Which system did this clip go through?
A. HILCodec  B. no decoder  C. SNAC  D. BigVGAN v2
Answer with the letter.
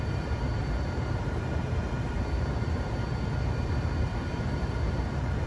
D